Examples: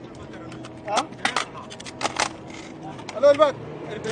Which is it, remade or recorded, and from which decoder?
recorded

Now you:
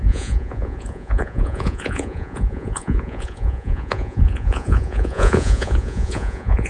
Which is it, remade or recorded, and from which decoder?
remade, vocoder, Vocos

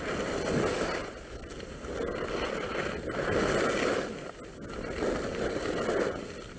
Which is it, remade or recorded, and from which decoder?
recorded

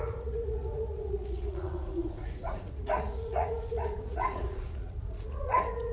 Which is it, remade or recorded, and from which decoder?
remade, vocoder, Vocos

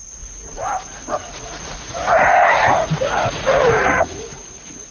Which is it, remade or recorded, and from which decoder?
remade, vocoder, Vocos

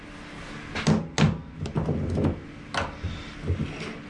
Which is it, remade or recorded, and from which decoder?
recorded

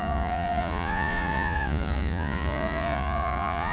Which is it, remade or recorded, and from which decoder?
remade, vocoder, Vocos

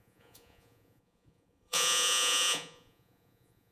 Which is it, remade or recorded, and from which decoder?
remade, vocoder, Vocos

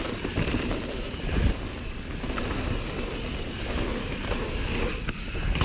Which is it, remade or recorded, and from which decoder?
recorded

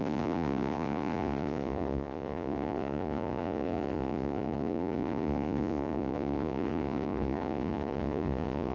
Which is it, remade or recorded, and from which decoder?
remade, vocoder, Vocos